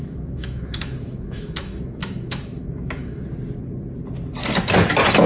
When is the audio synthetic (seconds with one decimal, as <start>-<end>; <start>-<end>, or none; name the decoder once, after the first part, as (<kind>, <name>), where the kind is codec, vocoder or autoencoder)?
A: 0.0-3.2 (autoencoder, DAC-VAE)